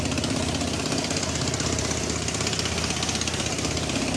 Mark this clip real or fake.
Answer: real